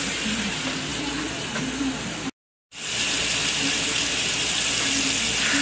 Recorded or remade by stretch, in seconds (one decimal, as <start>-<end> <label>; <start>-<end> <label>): 0.0-5.6 recorded